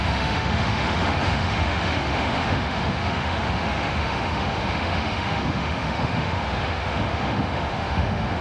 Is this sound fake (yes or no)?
yes